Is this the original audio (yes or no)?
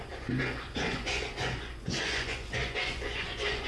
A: no